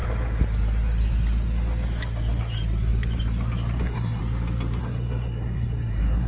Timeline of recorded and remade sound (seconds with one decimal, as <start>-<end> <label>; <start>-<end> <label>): 0.0-3.8 recorded; 3.8-4.2 remade; 4.2-4.8 recorded; 4.8-6.3 remade